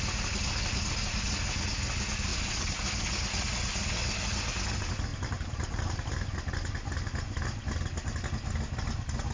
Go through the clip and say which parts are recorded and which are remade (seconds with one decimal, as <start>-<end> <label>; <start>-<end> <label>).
0.0-2.3 recorded; 2.3-2.8 remade; 2.8-5.1 recorded; 5.1-6.0 remade; 6.0-9.3 recorded